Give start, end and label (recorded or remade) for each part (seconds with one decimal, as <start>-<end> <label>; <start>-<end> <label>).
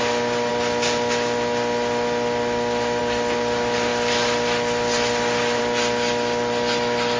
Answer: 0.0-7.2 recorded